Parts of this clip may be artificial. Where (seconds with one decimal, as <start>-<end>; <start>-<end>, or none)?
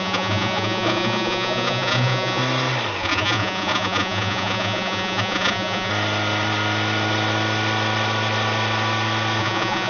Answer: 0.0-2.4; 3.0-5.9; 9.4-9.9